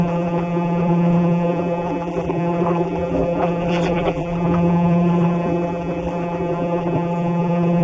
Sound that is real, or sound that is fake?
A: fake